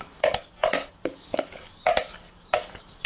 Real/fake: fake